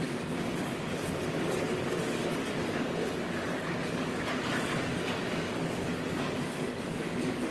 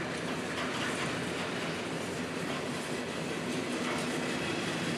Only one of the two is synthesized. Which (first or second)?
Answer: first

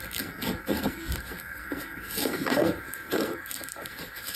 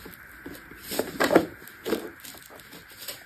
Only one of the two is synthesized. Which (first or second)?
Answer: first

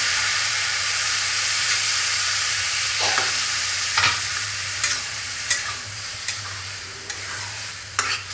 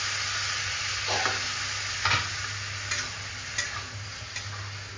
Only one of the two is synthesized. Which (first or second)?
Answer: first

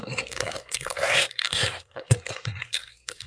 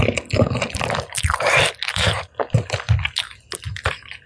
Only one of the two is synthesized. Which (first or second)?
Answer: first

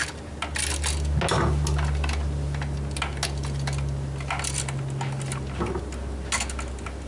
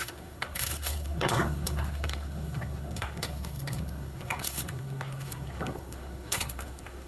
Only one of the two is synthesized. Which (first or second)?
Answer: second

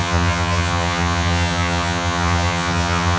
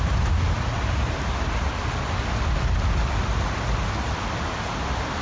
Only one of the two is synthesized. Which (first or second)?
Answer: first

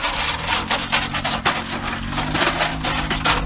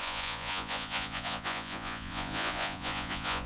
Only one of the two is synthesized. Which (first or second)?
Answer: second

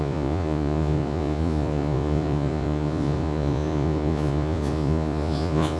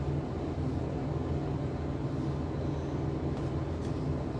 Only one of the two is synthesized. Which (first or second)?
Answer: first